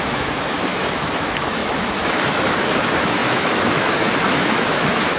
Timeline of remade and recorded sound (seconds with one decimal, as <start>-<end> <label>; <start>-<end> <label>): 0.0-5.2 remade